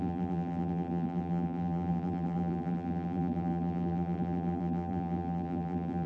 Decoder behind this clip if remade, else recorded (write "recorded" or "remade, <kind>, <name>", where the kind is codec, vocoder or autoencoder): remade, vocoder, BigVGAN v2